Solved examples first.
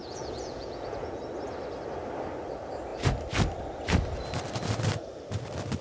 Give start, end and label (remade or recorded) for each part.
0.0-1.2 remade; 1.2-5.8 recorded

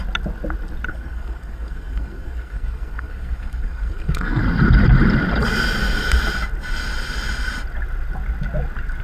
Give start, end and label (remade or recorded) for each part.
0.0-0.9 recorded; 0.9-4.4 remade; 4.4-9.0 recorded

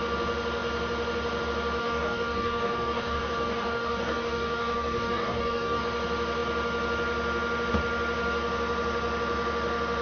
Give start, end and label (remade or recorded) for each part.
0.0-1.8 recorded; 1.8-5.8 remade; 5.8-10.0 recorded

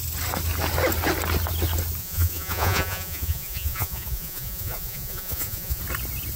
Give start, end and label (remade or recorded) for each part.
0.0-2.0 recorded; 2.0-5.8 remade; 5.8-6.4 recorded